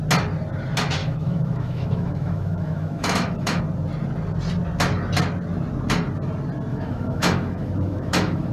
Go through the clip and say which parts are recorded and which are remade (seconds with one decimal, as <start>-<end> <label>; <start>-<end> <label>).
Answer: 0.0-1.0 recorded; 1.0-3.6 remade; 3.6-6.7 recorded; 6.7-8.5 remade